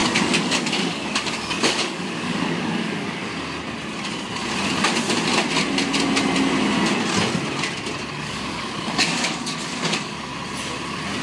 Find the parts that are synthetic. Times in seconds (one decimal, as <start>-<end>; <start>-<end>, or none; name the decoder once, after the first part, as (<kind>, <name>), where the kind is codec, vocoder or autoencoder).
0.0-3.3 (codec, DAC); 8.1-10.3